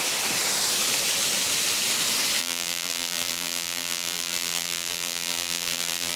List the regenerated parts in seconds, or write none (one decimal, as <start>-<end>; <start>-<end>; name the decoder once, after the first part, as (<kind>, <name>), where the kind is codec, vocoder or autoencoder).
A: 2.4-6.2 (vocoder, BigVGAN v2)